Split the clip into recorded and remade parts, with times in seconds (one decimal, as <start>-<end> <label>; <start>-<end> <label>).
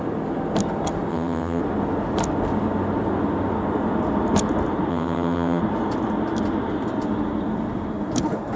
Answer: 0.0-1.1 recorded; 1.1-1.6 remade; 1.6-4.9 recorded; 4.9-5.6 remade; 5.6-8.6 recorded